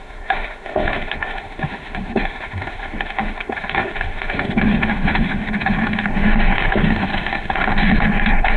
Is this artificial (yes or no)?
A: yes